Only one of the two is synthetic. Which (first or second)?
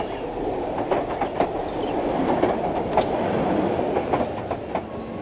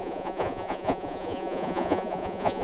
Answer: second